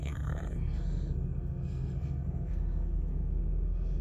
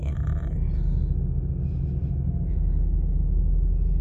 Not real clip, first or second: first